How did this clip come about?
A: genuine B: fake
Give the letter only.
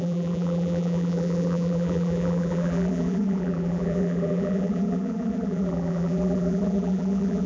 B